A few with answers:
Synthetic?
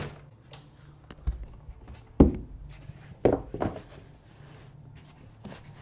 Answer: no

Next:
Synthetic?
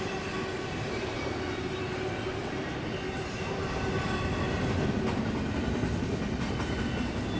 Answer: no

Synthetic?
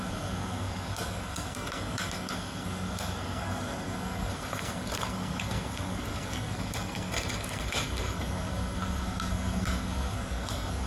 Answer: yes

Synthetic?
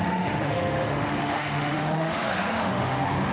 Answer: yes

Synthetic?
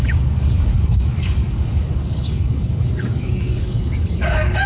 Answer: yes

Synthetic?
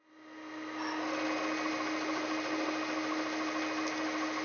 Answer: no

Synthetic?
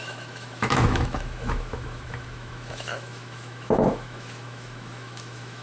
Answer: yes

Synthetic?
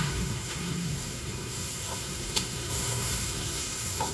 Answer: yes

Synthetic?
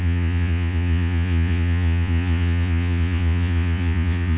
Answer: yes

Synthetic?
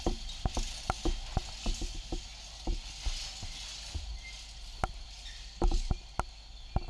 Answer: no